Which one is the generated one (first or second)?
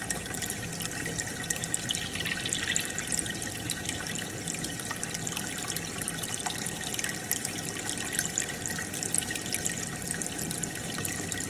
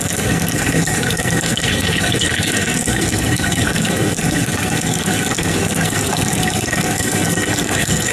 second